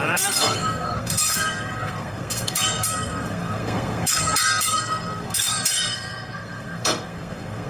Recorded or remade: remade